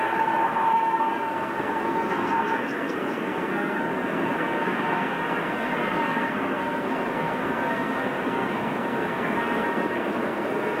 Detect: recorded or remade remade